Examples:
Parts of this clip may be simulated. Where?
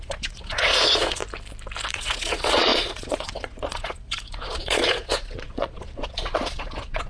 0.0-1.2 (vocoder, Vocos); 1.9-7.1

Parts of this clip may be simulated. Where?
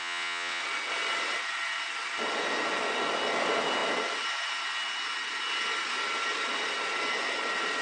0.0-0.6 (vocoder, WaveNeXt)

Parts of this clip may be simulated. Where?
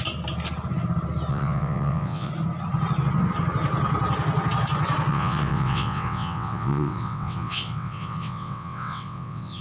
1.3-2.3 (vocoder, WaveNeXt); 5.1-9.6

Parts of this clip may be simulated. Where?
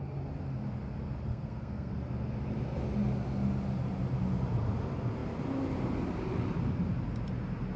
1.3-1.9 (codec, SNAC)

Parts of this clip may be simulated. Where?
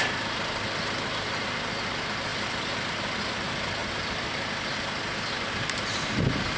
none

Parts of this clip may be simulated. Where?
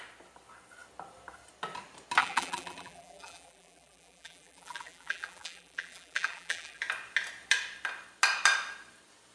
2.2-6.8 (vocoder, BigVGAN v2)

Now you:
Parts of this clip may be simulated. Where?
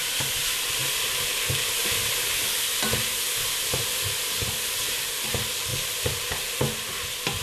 0.0-0.8 (vocoder, BigVGAN v2); 1.9-7.4